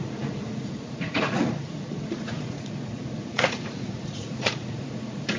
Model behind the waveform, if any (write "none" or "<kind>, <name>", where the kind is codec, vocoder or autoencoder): vocoder, Vocos